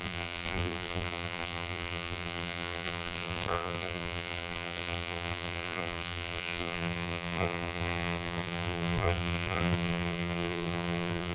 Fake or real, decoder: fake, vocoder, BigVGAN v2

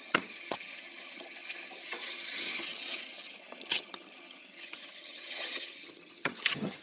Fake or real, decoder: fake, vocoder, HiFi-GAN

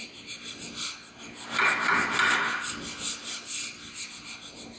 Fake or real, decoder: real